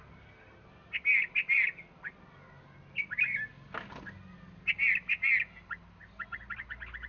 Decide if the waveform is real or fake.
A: real